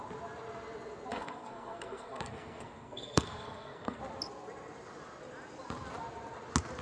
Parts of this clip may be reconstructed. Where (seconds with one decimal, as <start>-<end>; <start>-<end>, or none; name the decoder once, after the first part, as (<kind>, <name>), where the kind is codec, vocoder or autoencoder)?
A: 1.1-4.0 (codec, SNAC)